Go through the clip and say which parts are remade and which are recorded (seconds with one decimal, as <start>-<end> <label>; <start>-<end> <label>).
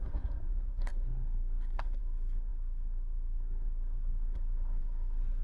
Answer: 0.0-5.4 remade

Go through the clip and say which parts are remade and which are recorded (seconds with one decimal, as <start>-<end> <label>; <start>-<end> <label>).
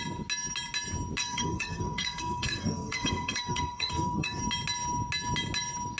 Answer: 0.0-1.2 recorded; 1.2-4.4 remade; 4.4-6.0 recorded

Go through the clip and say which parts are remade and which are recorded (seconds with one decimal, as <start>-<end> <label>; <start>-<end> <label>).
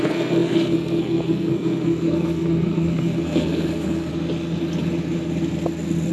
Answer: 0.0-4.1 remade; 4.1-6.1 recorded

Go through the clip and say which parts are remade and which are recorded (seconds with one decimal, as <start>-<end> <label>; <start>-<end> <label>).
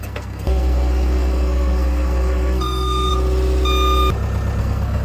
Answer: 0.0-3.1 remade; 3.1-4.6 recorded; 4.6-5.0 remade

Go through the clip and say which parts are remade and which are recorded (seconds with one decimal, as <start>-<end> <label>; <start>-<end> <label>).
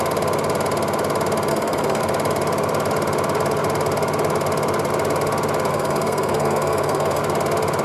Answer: 0.0-1.5 recorded; 1.5-2.0 remade; 2.0-5.7 recorded; 5.7-7.2 remade; 7.2-7.8 recorded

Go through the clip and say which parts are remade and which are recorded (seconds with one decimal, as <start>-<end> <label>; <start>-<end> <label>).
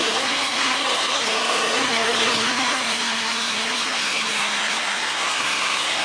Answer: 0.0-6.0 remade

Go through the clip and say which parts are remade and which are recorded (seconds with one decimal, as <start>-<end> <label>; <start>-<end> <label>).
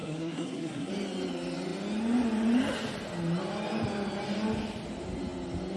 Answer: 0.0-0.9 remade; 0.9-5.8 recorded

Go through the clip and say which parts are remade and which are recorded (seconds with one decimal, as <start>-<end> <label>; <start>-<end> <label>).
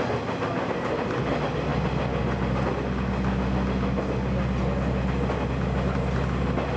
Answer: 0.0-6.8 recorded